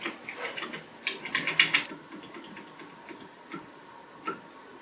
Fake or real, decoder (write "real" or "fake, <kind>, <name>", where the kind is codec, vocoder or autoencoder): real